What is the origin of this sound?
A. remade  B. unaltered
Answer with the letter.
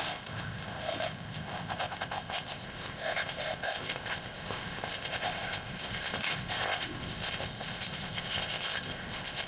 A